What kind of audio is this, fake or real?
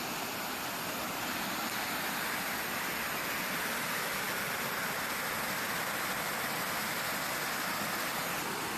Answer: real